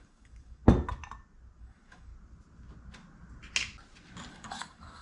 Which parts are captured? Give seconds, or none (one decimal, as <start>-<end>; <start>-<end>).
0.6-1.6; 2.1-4.3